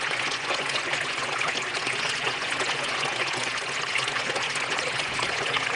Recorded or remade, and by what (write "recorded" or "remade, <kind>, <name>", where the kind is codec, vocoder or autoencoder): remade, vocoder, Vocos